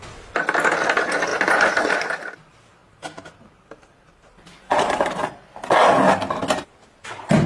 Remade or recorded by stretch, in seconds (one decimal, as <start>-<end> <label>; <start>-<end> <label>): 0.0-1.3 recorded; 1.3-1.9 remade; 1.9-2.8 recorded; 2.8-5.3 remade; 5.3-7.5 recorded

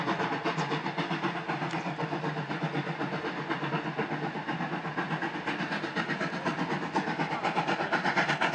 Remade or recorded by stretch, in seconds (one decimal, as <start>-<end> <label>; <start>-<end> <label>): 0.0-8.5 recorded

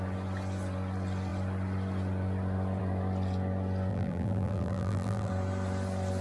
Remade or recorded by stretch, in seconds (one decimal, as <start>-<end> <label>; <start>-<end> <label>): 0.0-3.9 recorded; 3.9-5.3 remade; 5.3-6.2 recorded

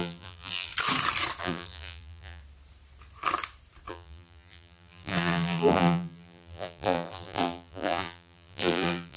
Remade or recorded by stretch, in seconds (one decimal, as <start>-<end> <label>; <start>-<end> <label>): 0.0-0.7 remade; 0.7-1.4 recorded; 1.4-2.4 remade; 2.4-3.9 recorded; 3.9-9.2 remade

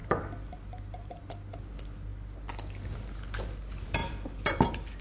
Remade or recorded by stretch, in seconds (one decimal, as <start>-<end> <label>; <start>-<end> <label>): 0.0-1.1 remade; 1.1-4.0 recorded; 4.0-4.6 remade; 4.6-5.0 recorded

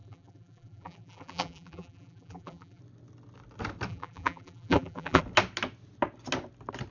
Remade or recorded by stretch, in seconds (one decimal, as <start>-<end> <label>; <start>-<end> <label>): 0.0-2.8 remade; 2.8-3.9 recorded; 3.9-5.2 remade; 5.2-6.9 recorded

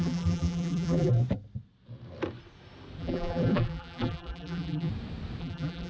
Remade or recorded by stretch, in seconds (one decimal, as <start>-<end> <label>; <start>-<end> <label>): 0.0-1.2 remade; 1.2-3.0 recorded; 3.0-4.9 remade; 4.9-5.4 recorded; 5.4-5.9 remade

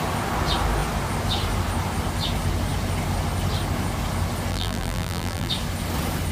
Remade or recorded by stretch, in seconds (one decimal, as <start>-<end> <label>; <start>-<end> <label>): 0.0-4.5 recorded; 4.5-5.5 remade; 5.5-6.3 recorded